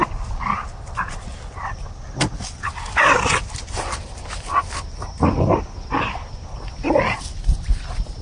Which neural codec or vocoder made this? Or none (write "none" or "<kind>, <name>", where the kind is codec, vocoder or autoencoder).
none